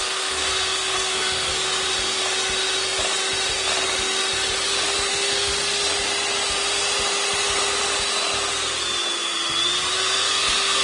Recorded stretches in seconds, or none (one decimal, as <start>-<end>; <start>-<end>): 1.5-5.1; 5.5-9.9